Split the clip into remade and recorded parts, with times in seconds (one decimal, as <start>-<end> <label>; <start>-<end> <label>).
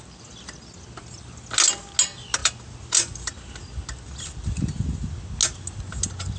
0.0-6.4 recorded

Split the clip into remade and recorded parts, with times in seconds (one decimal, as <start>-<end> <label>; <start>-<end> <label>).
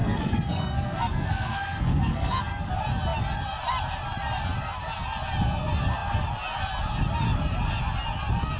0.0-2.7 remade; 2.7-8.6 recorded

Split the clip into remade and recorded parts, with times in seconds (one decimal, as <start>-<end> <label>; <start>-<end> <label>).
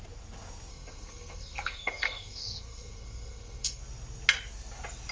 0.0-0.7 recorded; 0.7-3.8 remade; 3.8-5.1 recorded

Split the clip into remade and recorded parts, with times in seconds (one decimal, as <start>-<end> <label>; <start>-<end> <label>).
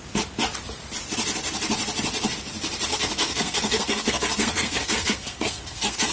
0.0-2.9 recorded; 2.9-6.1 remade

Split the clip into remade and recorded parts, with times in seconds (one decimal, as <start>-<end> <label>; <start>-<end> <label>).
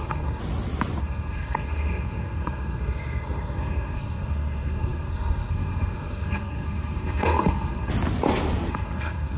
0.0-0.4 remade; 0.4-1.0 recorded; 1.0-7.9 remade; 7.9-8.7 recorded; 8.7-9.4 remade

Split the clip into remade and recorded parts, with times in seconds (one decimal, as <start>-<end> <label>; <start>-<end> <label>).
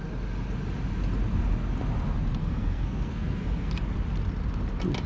0.0-2.4 recorded; 2.4-3.7 remade; 3.7-5.1 recorded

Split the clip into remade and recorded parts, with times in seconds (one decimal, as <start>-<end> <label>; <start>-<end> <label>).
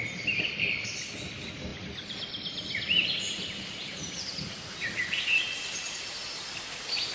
0.0-7.1 recorded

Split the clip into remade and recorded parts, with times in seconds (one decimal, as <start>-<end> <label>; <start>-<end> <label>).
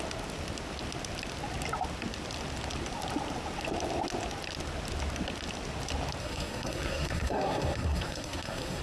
0.0-6.2 recorded; 6.2-8.8 remade